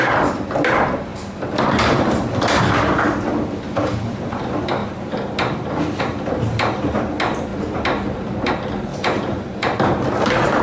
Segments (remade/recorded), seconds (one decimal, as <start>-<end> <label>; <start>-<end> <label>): 0.0-8.9 recorded; 8.9-10.1 remade; 10.1-10.6 recorded